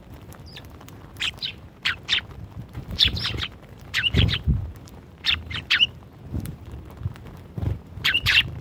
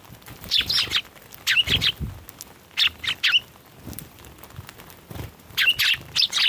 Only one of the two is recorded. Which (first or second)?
second